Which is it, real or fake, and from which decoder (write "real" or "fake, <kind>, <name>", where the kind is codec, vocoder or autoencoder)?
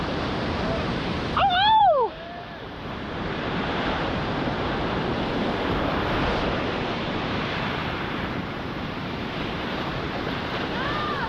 fake, vocoder, BigVGAN v2